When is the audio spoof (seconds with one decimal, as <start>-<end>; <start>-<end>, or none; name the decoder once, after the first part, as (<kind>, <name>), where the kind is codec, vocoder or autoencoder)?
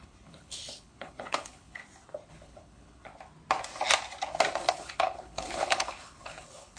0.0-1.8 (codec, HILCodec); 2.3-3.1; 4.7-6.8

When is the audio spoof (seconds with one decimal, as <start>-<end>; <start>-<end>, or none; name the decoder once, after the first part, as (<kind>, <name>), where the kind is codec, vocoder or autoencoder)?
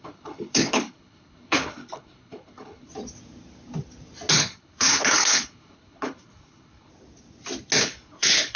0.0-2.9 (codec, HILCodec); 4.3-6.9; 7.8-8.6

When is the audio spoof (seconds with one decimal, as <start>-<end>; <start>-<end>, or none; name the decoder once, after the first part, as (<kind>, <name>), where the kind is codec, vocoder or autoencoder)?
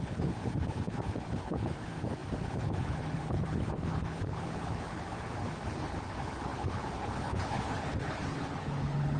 0.0-9.2 (codec, HILCodec)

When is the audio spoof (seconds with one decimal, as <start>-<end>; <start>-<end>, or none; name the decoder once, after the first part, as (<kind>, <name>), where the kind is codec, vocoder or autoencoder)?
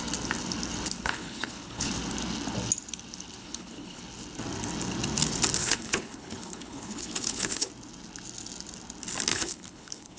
1.0-1.9 (codec, HILCodec); 3.4-4.0; 5.6-7.7; 9.3-10.2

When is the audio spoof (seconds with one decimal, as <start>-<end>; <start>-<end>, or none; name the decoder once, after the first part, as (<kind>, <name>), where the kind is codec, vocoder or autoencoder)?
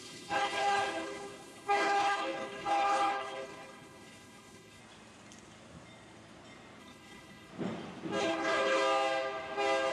0.0-4.8 (codec, HILCodec); 6.8-7.5; 8.2-8.8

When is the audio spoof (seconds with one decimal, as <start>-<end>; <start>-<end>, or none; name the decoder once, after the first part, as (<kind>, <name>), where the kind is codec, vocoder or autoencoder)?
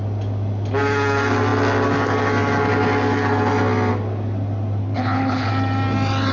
4.8-5.5 (codec, HILCodec)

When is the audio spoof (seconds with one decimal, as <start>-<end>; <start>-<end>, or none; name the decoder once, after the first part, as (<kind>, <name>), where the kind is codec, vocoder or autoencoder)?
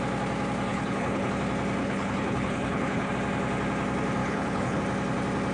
0.7-1.3 (codec, HILCodec); 1.8-3.1; 4.2-4.8